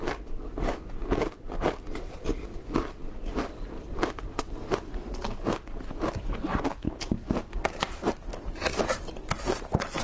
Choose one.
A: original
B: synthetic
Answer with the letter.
A